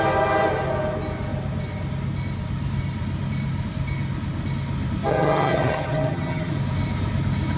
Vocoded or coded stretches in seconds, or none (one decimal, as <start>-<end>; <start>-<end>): 5.1-6.5